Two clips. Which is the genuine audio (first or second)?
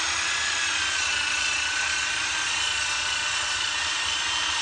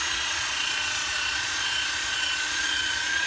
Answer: first